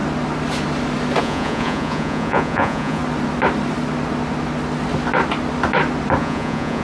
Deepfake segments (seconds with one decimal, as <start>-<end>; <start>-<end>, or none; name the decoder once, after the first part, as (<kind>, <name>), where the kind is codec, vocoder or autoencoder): 1.2-3.0 (vocoder, Vocos); 6.2-6.8